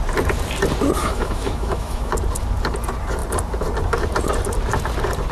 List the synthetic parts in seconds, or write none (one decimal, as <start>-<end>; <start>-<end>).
1.0-2.1